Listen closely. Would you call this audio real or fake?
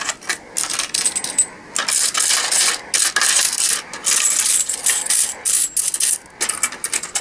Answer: real